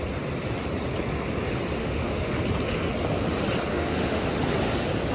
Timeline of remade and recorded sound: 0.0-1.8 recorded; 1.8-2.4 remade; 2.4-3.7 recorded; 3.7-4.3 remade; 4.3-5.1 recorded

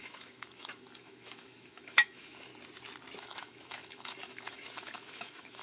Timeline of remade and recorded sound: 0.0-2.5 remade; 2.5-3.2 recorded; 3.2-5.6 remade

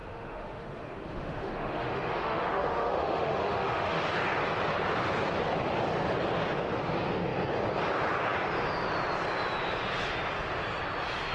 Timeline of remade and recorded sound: 0.0-4.0 remade; 4.0-11.3 recorded